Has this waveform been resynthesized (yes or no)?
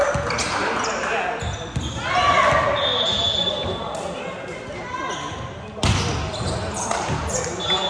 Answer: no